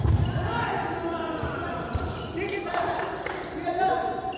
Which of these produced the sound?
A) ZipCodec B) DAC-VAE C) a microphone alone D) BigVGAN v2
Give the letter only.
C